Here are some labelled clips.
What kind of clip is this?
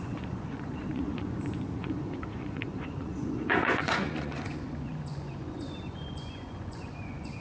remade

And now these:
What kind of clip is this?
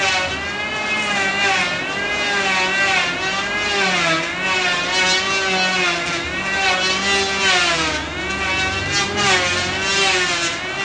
recorded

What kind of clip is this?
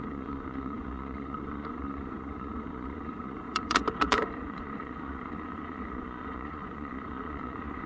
remade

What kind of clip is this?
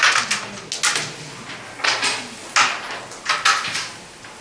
recorded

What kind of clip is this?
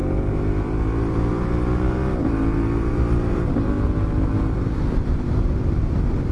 remade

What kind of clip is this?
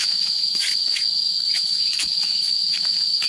remade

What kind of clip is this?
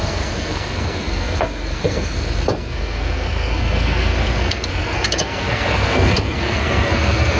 remade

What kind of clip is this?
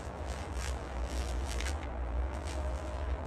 remade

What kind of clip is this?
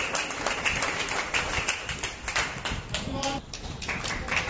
recorded